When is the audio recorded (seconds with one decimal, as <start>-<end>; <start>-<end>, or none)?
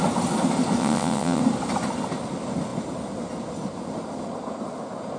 0.0-0.8; 1.4-5.2